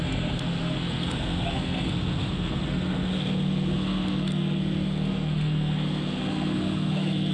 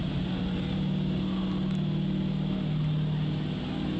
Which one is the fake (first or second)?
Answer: first